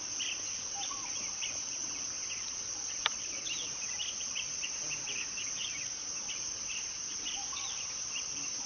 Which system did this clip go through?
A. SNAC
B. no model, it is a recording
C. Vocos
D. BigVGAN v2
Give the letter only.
B